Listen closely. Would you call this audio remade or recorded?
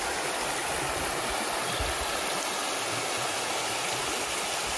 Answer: recorded